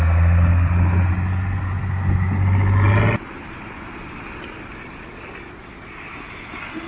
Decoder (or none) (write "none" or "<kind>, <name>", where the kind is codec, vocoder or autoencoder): none